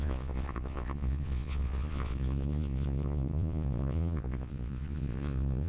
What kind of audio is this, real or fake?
fake